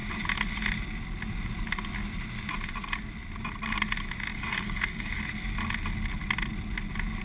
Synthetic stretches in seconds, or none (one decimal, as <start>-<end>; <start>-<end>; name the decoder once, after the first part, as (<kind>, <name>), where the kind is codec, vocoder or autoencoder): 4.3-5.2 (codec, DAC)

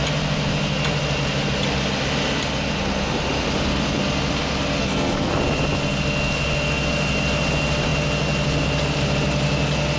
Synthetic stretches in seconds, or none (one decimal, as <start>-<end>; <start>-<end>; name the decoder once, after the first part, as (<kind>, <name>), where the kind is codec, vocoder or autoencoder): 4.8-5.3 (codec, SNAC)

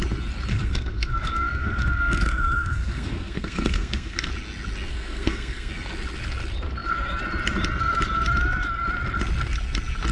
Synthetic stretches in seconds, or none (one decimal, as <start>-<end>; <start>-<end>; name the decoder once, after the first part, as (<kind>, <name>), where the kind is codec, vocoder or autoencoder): 0.5-4.3 (codec, SNAC); 4.9-5.7